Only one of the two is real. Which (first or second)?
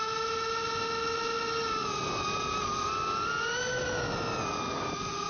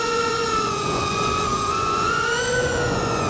first